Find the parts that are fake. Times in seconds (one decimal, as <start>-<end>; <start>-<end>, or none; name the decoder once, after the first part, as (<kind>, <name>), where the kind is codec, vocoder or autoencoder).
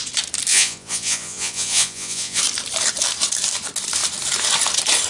0.5-2.4 (vocoder, Vocos)